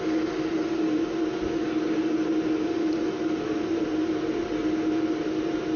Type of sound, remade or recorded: recorded